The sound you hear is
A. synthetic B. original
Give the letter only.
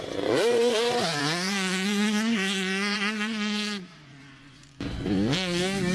A